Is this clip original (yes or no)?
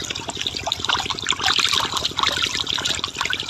yes